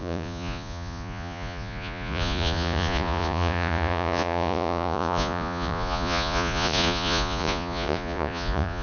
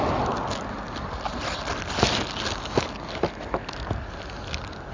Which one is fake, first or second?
first